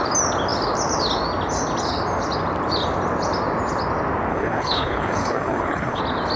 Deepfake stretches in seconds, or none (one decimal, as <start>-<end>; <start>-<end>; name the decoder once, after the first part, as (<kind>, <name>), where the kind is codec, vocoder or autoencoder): 4.3-6.0 (codec, HILCodec)